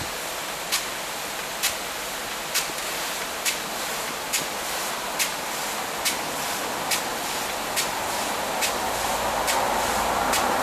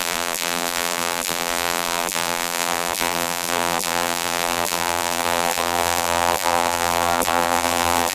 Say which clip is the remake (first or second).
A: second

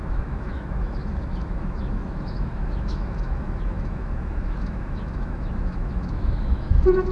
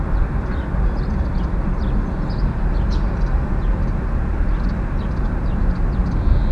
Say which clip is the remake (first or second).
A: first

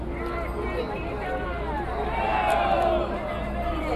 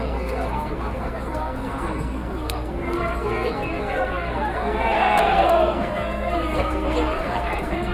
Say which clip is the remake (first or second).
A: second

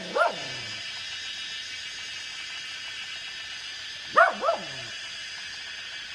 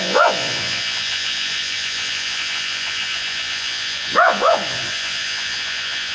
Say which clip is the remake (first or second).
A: second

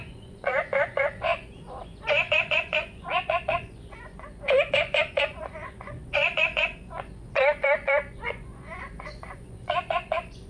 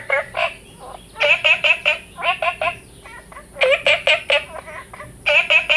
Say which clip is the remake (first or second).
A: first